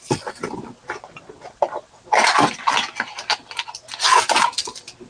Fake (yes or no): no